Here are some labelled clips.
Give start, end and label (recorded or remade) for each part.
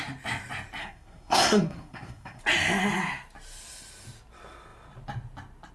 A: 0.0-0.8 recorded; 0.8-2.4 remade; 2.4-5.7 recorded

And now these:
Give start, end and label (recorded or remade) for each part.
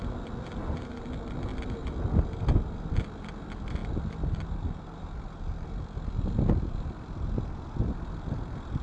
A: 0.0-8.8 recorded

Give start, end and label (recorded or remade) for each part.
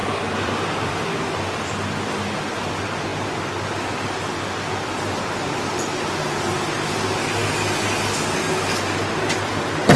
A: 0.0-2.7 remade; 2.7-10.0 recorded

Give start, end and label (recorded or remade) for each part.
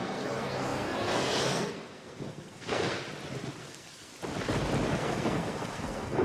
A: 0.0-3.0 remade; 3.0-3.6 recorded; 3.6-4.1 remade; 4.1-4.9 recorded; 4.9-6.2 remade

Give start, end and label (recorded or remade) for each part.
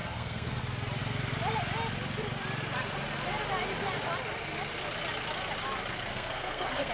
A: 0.0-0.6 remade; 0.6-6.1 recorded; 6.1-6.9 remade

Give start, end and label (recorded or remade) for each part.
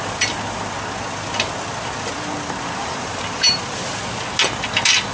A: 0.0-2.8 recorded; 2.8-4.0 remade; 4.0-5.1 recorded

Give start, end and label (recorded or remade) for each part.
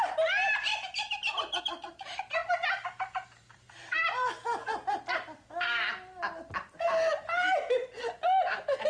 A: 0.0-8.9 remade